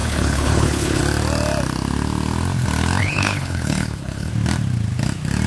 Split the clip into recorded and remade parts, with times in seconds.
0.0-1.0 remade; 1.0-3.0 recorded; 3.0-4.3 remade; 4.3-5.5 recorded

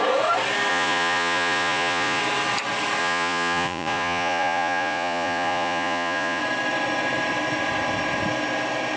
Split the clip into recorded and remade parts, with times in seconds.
0.0-0.7 recorded; 0.7-2.2 remade; 2.2-3.0 recorded; 3.0-6.4 remade; 6.4-9.0 recorded

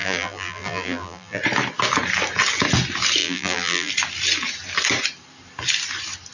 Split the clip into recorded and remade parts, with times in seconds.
0.0-1.4 remade; 1.4-3.2 recorded; 3.2-3.9 remade; 3.9-6.3 recorded

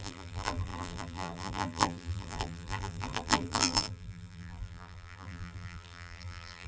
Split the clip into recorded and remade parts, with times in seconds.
0.0-6.7 remade

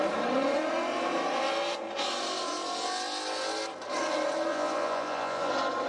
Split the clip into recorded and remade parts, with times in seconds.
0.0-4.5 recorded; 4.5-5.5 remade; 5.5-5.9 recorded

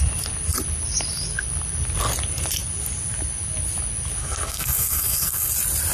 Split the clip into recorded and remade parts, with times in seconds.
0.0-4.2 recorded; 4.2-5.5 remade; 5.5-5.9 recorded

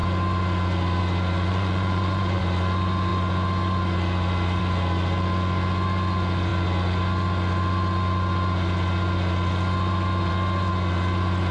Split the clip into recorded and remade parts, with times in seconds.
0.0-1.5 recorded; 1.5-2.4 remade; 2.4-11.5 recorded

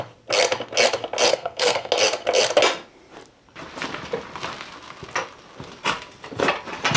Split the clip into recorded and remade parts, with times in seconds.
0.0-1.3 recorded; 1.3-1.9 remade; 1.9-7.0 recorded